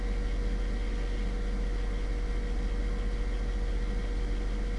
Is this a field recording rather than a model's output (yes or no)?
yes